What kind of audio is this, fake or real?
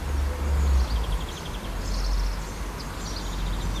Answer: real